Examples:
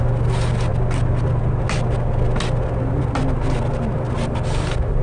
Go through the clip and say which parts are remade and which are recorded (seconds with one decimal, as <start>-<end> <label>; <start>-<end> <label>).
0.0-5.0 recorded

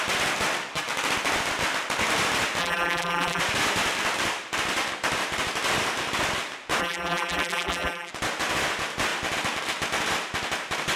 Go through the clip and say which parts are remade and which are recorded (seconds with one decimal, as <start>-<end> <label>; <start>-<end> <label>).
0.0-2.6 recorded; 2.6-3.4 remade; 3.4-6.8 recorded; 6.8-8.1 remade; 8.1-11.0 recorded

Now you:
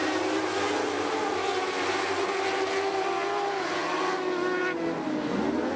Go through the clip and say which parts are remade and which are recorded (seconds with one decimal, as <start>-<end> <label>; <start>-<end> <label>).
0.0-5.8 recorded

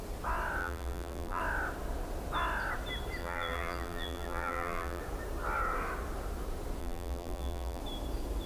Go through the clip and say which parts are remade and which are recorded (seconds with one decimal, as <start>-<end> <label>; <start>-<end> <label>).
0.0-0.6 recorded; 0.6-1.4 remade; 1.4-3.2 recorded; 3.2-5.0 remade; 5.0-6.8 recorded; 6.8-7.8 remade; 7.8-8.5 recorded

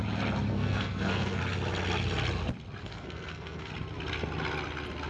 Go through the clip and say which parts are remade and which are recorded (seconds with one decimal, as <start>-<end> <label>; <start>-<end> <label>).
0.0-0.5 recorded; 0.5-1.4 remade; 1.4-2.8 recorded; 2.8-3.7 remade; 3.7-5.1 recorded

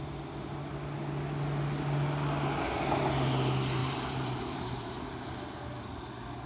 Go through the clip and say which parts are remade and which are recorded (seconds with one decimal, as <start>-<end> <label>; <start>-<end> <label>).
0.0-3.8 recorded; 3.8-5.1 remade; 5.1-6.5 recorded

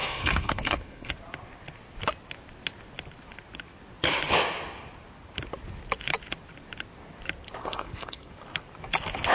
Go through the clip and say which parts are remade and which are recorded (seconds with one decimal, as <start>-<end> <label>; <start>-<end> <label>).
0.0-1.1 remade; 1.1-7.6 recorded; 7.6-8.3 remade; 8.3-9.3 recorded

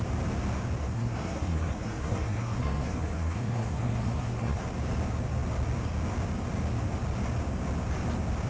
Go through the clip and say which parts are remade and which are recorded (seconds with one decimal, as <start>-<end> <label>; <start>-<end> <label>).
0.0-0.8 recorded; 0.8-4.6 remade; 4.6-8.5 recorded